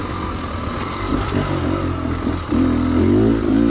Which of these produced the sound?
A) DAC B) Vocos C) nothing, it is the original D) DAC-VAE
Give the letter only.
C